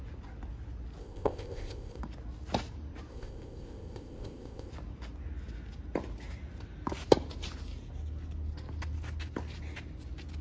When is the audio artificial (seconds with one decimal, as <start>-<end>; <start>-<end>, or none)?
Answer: 1.0-2.0; 3.1-4.7